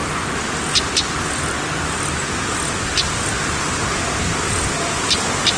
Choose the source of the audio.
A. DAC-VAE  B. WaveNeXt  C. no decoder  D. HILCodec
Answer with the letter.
C